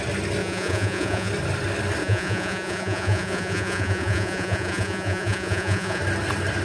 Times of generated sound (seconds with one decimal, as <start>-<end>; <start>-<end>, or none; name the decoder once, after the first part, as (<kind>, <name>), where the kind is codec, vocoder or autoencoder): 0.4-1.3 (vocoder, Vocos); 2.0-6.0